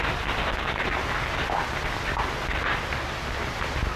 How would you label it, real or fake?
real